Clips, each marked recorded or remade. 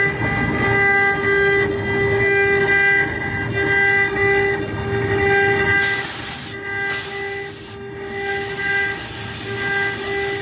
recorded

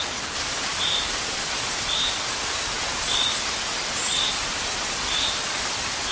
recorded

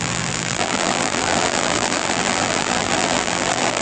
remade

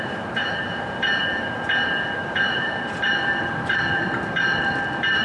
remade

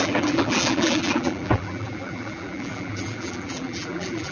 remade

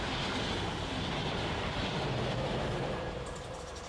recorded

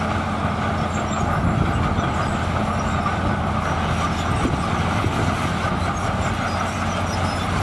recorded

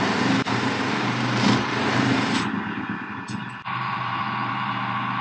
remade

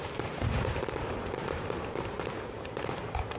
remade